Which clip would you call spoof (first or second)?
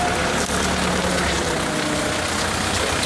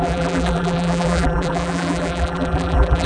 second